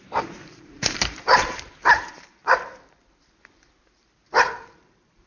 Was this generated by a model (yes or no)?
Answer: yes